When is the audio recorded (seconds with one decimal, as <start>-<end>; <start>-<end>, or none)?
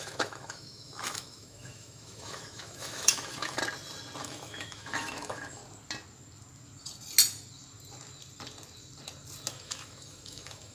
3.6-4.2; 5.6-9.5